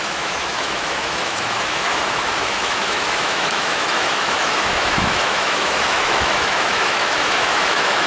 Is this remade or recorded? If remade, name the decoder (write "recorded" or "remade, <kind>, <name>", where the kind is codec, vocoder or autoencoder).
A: remade, autoencoder, DAC-VAE